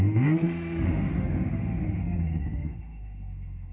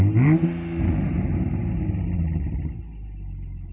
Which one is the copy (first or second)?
first